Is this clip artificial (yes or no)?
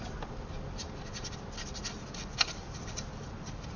no